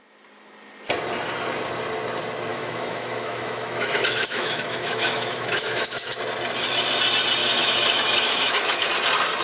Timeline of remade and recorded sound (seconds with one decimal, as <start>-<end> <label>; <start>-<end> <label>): 0.0-2.5 recorded; 2.5-6.2 remade; 6.2-7.4 recorded; 7.4-8.9 remade; 8.9-9.4 recorded